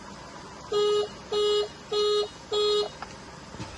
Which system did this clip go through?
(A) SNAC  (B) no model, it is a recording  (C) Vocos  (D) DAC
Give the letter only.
B